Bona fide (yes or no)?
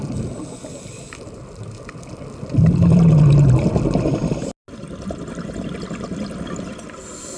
yes